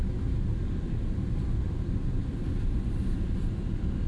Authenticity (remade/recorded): recorded